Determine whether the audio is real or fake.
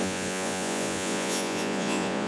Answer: fake